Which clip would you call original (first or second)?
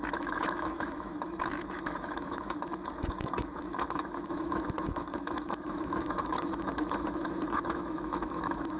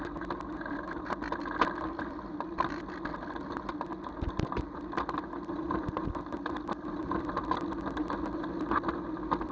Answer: second